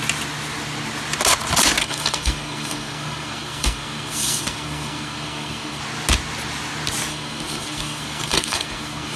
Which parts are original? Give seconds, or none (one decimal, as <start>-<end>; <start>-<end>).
0.0-1.8; 5.8-7.1